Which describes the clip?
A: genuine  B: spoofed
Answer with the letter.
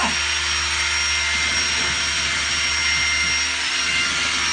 A